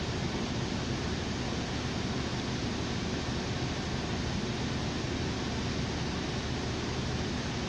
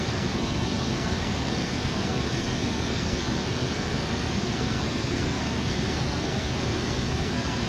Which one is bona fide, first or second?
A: first